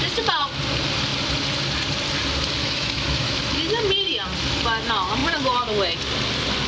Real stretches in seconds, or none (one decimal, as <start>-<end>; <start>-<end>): 0.0-2.6; 3.4-6.7